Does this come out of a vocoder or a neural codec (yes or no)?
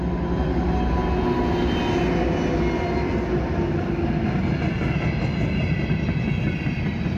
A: no